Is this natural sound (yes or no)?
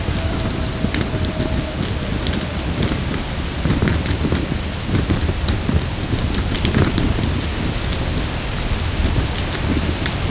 yes